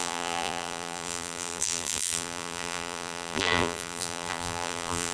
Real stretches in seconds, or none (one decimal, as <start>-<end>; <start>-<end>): none